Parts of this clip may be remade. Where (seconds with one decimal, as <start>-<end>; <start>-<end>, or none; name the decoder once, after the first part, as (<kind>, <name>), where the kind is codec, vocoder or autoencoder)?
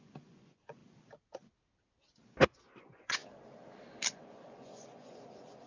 0.0-0.8 (vocoder, Vocos); 2.8-3.2; 4.1-5.7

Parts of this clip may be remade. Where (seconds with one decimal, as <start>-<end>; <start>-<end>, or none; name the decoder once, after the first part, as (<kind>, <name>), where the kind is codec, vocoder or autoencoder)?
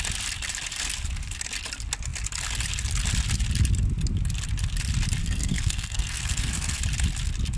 5.2-6.8 (codec, SNAC)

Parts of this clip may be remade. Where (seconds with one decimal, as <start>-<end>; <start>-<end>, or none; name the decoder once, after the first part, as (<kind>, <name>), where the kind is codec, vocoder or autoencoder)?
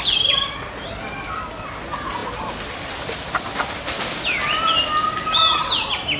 none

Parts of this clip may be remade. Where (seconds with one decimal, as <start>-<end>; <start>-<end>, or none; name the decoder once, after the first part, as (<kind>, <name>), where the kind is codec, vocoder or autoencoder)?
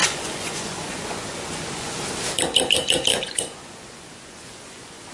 0.0-2.0 (vocoder, Vocos); 3.1-5.1